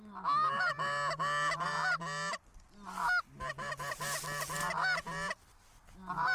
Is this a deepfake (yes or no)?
no